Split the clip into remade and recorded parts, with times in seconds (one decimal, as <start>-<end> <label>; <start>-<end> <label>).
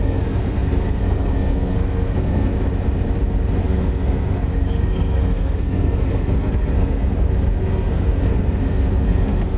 0.0-2.5 remade; 2.5-3.6 recorded; 3.6-9.6 remade